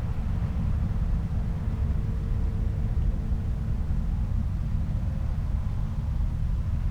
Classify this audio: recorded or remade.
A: recorded